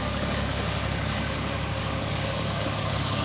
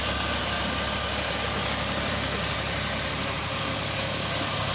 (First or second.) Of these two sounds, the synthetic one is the first